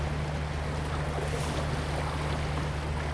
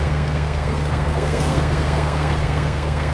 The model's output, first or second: second